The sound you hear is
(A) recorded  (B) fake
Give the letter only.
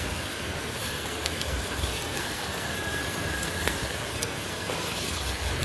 B